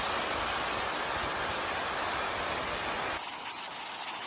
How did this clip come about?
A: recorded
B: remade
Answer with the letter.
A